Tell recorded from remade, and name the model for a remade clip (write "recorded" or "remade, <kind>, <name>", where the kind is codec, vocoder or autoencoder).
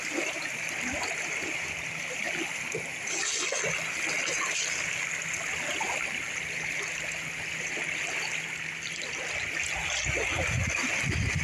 recorded